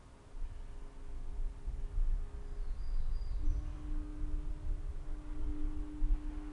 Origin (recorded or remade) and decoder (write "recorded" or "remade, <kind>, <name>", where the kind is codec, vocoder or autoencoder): recorded